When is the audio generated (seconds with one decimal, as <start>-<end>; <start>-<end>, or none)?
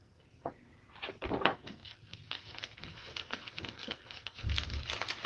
0.0-0.7; 1.4-4.7